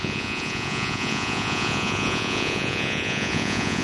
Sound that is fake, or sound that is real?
fake